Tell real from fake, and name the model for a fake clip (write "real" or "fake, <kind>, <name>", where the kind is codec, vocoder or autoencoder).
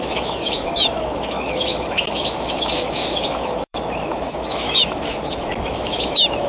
fake, autoencoder, DAC-VAE